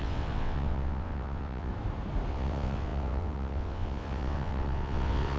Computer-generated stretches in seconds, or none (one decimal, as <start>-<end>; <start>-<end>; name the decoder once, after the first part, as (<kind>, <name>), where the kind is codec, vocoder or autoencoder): 0.0-1.7 (vocoder, WaveNeXt); 2.3-5.4

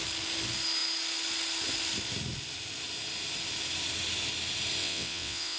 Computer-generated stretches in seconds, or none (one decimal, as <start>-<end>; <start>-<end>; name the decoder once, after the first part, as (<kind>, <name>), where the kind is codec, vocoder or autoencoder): 4.8-5.6 (vocoder, WaveNeXt)

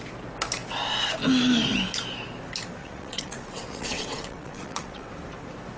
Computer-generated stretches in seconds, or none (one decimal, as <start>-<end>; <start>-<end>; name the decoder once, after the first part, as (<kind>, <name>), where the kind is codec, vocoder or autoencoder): 2.8-5.1 (vocoder, WaveNeXt)

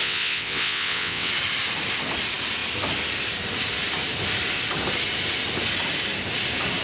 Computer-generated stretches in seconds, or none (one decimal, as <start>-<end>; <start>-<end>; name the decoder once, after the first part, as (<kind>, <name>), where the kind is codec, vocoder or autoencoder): 0.0-1.3 (vocoder, WaveNeXt)

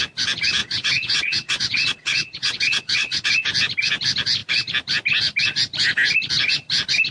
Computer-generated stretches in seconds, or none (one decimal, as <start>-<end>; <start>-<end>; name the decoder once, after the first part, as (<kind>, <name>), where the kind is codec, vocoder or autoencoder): 0.6-3.3 (vocoder, WaveNeXt)